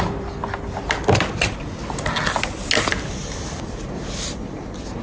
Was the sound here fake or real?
real